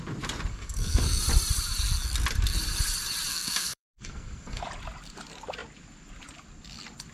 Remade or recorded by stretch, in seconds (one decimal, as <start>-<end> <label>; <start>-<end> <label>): 0.0-0.5 recorded; 0.5-1.2 remade; 1.2-3.3 recorded; 3.3-4.6 remade; 4.6-7.1 recorded